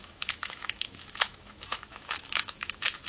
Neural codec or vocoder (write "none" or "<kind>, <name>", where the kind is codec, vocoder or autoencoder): autoencoder, DAC-VAE